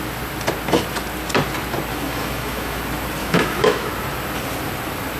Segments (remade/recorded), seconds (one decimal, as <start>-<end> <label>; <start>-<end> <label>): 0.0-1.9 recorded; 1.9-2.8 remade; 2.8-3.2 recorded; 3.2-3.9 remade; 3.9-5.2 recorded